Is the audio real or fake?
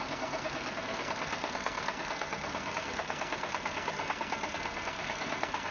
fake